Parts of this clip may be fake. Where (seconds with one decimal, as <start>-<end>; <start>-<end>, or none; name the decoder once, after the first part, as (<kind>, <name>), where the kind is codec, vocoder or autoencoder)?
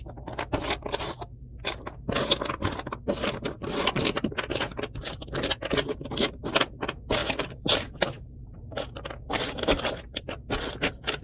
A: 3.6-4.3 (vocoder, BigVGAN v2); 7.2-9.9